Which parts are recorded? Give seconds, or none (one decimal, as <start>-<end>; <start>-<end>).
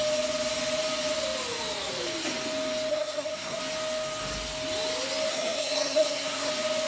0.0-2.9; 3.6-5.3; 6.5-6.9